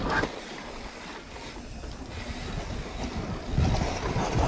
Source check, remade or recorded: remade